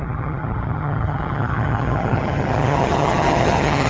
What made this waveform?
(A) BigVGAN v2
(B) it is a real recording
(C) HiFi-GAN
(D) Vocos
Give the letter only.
C